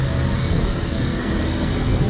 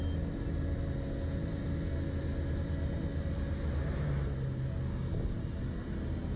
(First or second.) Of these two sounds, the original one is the second